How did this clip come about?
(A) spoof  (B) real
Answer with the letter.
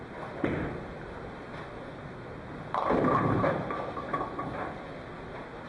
B